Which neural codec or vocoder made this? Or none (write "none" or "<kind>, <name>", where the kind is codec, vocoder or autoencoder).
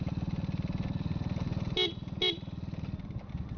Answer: none